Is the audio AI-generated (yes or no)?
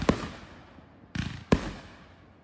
no